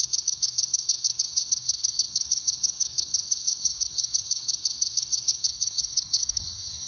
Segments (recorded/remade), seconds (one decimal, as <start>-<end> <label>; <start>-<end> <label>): 0.0-6.9 remade